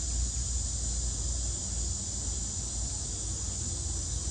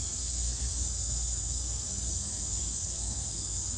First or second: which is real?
first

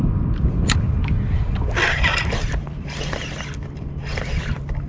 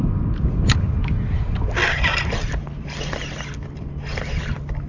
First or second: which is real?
second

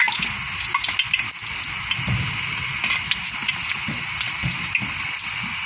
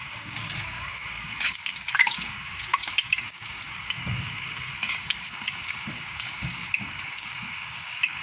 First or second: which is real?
first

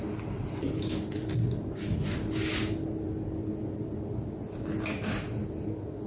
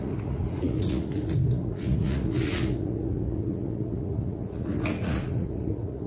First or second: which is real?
first